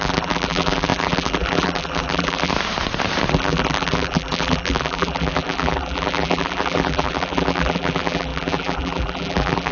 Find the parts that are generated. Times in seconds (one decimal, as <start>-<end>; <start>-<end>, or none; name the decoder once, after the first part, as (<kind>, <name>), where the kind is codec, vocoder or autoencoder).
0.0-2.5 (vocoder, BigVGAN v2); 3.3-9.7